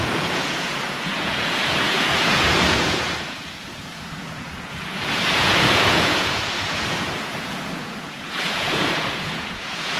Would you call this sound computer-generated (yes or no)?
yes